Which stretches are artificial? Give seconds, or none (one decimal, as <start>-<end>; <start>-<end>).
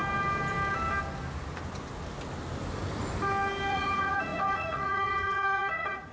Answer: 3.7-6.1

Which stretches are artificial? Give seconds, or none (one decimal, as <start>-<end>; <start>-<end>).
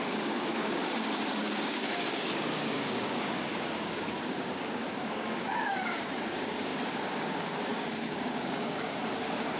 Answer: 0.0-9.6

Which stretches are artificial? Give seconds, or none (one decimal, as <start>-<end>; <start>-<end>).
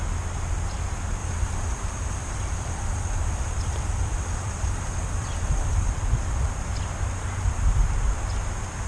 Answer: 1.2-5.9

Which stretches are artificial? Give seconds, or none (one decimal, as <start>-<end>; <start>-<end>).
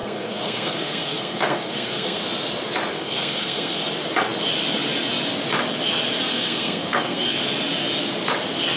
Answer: 0.0-2.2; 2.9-3.8; 6.3-7.4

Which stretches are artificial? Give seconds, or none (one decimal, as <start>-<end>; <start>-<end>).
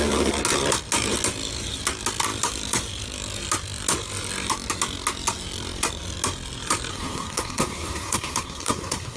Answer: 6.9-9.2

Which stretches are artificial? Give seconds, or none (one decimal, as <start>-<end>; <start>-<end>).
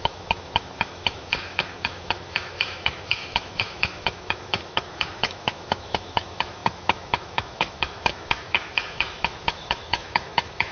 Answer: 0.0-10.7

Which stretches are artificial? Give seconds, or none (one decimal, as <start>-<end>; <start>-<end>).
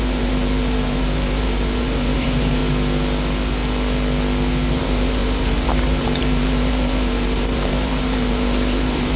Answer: 0.0-2.6; 4.7-9.2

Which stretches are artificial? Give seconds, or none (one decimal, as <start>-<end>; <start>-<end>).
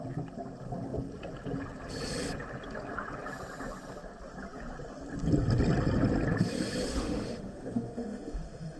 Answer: 6.8-8.8